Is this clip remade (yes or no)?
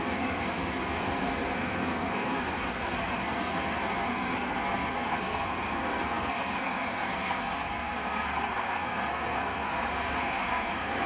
yes